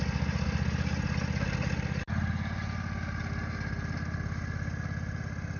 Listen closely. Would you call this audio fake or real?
real